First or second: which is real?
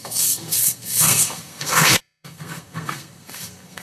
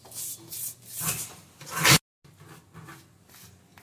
second